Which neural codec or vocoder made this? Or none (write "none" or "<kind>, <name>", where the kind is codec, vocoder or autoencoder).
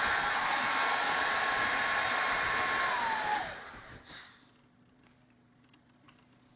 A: vocoder, BigVGAN v2